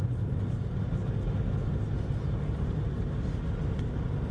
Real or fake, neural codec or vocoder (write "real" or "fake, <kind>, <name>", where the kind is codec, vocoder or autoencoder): real